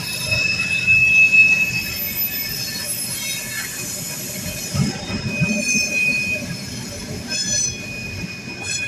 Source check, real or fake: real